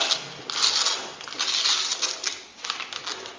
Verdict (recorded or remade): recorded